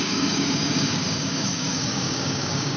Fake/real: fake